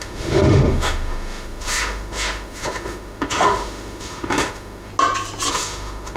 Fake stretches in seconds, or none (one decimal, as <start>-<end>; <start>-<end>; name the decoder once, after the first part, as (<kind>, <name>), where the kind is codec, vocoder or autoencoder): 0.0-4.9 (autoencoder, DAC-VAE); 5.5-6.2